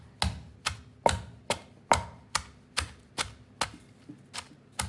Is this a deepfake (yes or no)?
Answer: no